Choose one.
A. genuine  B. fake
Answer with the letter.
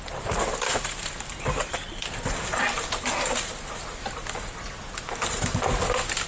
A